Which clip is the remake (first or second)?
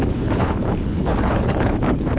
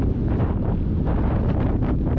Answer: first